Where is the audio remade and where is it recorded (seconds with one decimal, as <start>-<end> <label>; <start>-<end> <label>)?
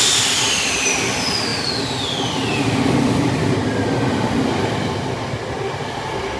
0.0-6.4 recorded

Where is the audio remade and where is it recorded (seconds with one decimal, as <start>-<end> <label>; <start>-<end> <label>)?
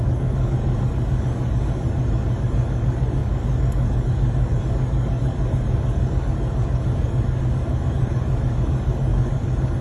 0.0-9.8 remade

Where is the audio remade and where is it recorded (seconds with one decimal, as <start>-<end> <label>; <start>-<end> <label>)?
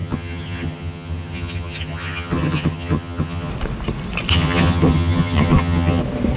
0.0-3.5 remade; 3.5-4.3 recorded; 4.3-6.0 remade; 6.0-6.4 recorded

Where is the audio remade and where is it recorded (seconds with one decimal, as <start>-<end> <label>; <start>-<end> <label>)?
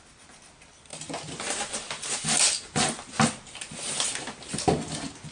0.0-5.3 recorded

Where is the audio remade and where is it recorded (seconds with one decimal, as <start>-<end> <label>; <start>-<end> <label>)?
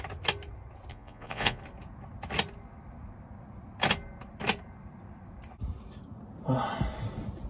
0.0-0.9 recorded; 0.9-1.6 remade; 1.6-7.5 recorded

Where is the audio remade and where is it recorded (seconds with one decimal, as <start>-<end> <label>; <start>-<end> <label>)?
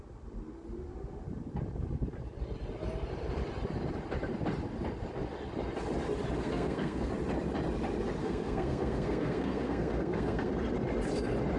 0.0-6.4 recorded; 6.4-7.1 remade; 7.1-8.2 recorded; 8.2-10.5 remade; 10.5-11.6 recorded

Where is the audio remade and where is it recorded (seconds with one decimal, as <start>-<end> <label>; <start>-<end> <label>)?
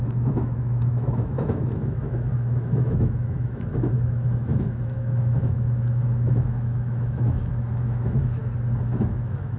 0.0-8.4 remade; 8.4-9.1 recorded; 9.1-9.6 remade